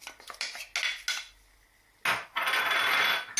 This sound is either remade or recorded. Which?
recorded